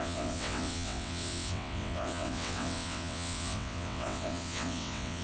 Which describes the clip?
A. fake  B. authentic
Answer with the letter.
A